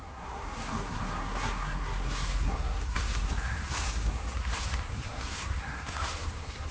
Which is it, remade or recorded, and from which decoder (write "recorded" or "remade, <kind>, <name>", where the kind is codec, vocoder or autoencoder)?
remade, codec, SNAC